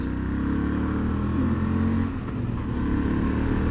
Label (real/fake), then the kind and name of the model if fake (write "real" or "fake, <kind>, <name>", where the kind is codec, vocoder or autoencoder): real